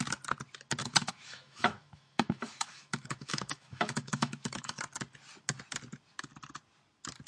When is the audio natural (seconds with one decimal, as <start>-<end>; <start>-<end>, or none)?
0.0-0.8; 4.8-7.3